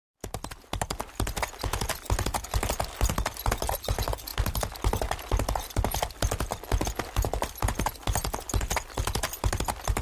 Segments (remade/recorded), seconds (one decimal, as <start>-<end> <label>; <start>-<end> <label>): 0.0-10.0 recorded